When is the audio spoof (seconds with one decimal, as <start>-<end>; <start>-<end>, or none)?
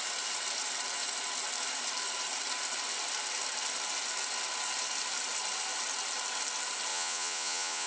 6.9-7.9